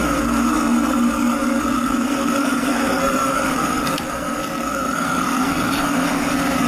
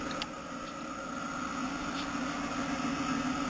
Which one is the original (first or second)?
second